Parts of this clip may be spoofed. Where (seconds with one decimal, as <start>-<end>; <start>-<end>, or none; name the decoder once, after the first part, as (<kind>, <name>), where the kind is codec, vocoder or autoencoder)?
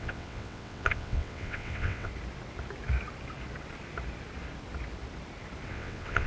0.0-2.1 (vocoder, WaveNeXt); 5.7-6.3